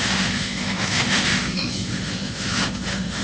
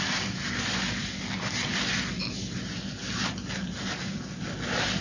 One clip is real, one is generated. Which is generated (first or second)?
first